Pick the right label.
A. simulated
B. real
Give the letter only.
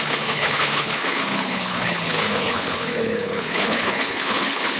A